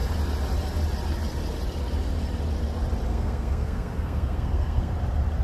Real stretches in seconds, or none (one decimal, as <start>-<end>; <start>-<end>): 0.0-3.1; 4.9-5.4